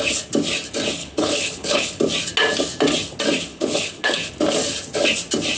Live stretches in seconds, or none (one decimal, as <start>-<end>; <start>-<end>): 0.0-1.0; 2.0-3.5; 4.3-5.6